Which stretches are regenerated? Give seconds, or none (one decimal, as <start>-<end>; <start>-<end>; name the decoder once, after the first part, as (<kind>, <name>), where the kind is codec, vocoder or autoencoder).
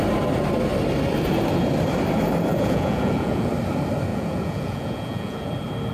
2.5-3.5 (vocoder, Vocos); 4.1-5.5